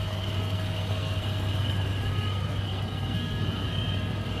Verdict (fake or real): fake